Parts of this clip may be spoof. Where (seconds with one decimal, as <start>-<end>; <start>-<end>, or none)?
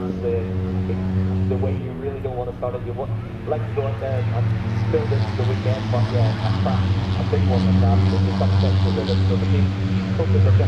none